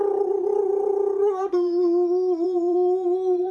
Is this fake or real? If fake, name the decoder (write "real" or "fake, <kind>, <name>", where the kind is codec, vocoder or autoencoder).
fake, vocoder, BigVGAN v2